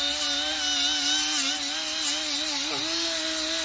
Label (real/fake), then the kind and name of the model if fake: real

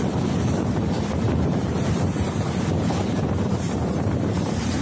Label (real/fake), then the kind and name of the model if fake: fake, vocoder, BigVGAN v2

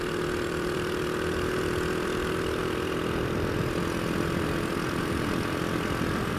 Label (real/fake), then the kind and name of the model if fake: fake, vocoder, BigVGAN v2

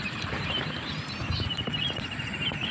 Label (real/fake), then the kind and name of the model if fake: fake, vocoder, BigVGAN v2